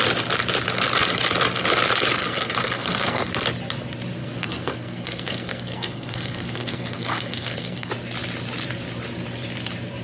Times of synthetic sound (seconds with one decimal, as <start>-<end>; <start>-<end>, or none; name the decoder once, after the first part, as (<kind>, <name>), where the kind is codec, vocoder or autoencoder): 2.2-3.3 (codec, SNAC); 4.2-7.9